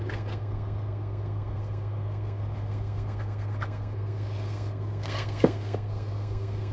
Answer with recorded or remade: remade